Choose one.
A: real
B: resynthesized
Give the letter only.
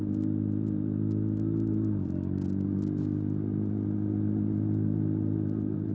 A